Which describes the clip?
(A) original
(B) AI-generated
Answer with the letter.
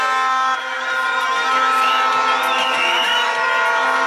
A